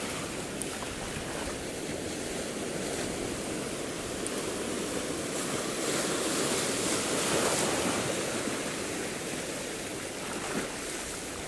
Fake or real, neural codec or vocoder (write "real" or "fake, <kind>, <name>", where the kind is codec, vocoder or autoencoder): real